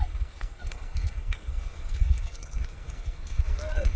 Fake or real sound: fake